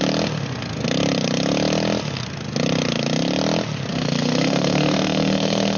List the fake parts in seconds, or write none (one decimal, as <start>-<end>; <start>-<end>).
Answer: 3.9-5.8